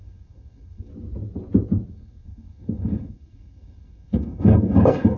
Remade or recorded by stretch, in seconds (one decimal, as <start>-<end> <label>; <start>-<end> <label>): 0.0-0.9 remade; 0.9-1.9 recorded; 1.9-5.2 remade